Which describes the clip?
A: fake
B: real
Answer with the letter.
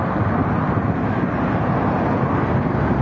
B